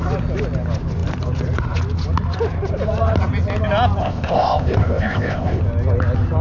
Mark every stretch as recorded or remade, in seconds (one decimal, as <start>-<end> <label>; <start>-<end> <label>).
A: 0.0-4.0 recorded; 4.0-5.6 remade; 5.6-6.4 recorded